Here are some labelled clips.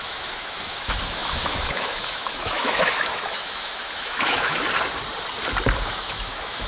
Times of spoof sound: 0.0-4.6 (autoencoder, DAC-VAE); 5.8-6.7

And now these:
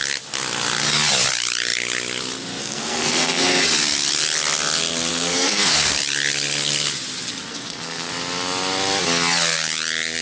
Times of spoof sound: 2.6-3.6 (codec, SNAC); 5.1-5.9; 7.5-8.1

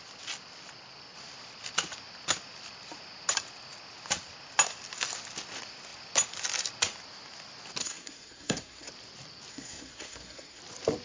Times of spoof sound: 7.8-8.9 (codec, SNAC); 9.5-10.6

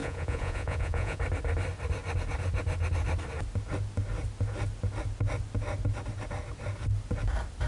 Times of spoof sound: 0.0-1.2 (vocoder, Vocos)

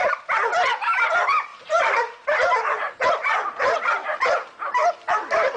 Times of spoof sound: 1.5-4.9 (vocoder, BigVGAN v2)

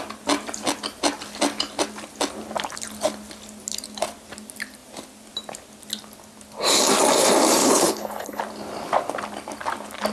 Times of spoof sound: 7.6-8.4 (codec, HILCodec)